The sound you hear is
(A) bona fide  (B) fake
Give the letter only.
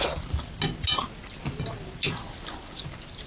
A